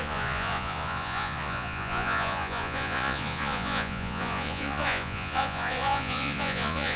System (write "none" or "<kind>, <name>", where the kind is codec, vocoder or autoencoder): vocoder, Vocos